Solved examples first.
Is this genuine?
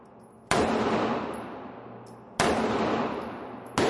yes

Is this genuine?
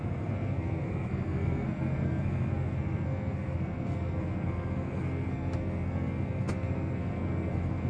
no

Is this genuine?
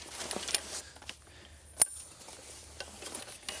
yes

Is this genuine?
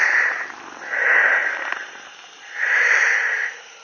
no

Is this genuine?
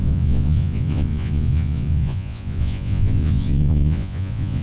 no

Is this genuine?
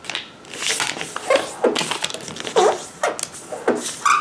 yes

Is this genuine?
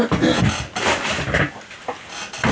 yes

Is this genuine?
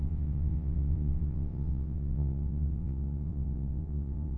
no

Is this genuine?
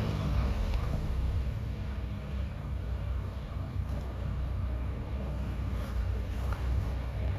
no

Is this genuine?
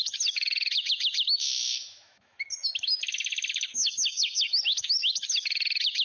no